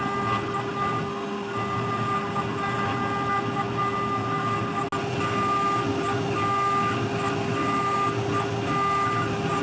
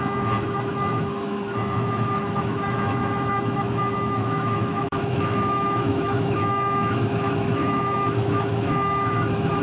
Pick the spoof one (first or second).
second